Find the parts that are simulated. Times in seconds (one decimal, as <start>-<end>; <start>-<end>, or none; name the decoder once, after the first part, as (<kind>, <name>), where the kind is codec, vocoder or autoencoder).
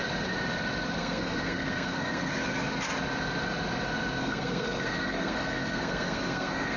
1.0-2.5 (codec, SNAC); 4.2-6.8